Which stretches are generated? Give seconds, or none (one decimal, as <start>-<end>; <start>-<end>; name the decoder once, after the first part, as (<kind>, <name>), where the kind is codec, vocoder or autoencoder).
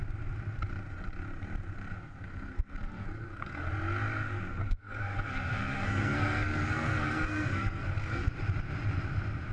1.9-3.7 (codec, SNAC); 4.5-8.3